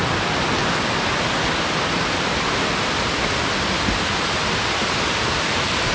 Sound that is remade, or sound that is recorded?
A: recorded